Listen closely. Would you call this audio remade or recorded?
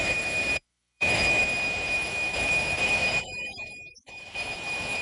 remade